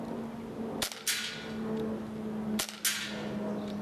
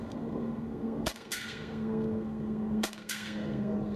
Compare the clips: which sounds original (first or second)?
first